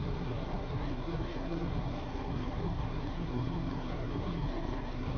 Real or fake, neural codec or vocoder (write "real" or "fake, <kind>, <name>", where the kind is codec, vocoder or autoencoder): fake, codec, SNAC